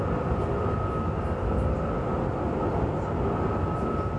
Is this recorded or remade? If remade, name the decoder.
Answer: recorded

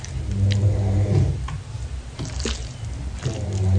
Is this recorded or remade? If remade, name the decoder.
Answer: recorded